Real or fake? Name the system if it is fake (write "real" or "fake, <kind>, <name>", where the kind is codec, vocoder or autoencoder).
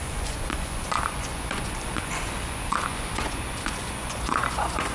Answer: fake, vocoder, Vocos